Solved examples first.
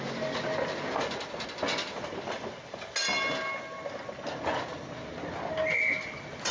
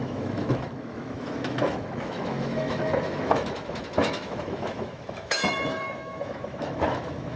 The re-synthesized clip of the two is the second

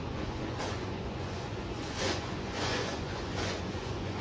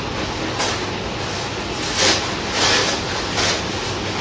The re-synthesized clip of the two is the first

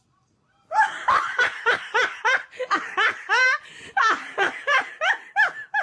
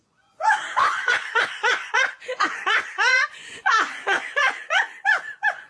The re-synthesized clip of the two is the second